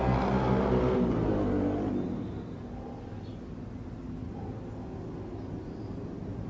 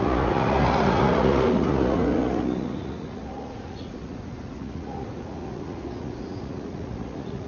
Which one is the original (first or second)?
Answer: first